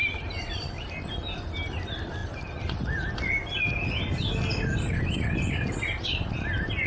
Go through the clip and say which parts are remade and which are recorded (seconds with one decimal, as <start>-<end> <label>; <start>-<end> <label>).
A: 0.0-6.9 recorded